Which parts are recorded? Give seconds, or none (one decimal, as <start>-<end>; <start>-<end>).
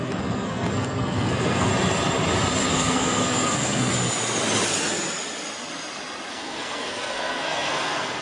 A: 1.7-2.7; 3.9-6.3